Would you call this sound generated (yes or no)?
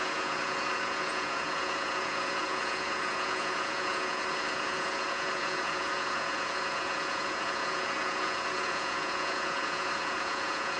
yes